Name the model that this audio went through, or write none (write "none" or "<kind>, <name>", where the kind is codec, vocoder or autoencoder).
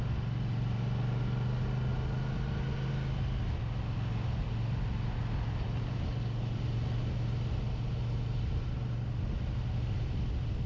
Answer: none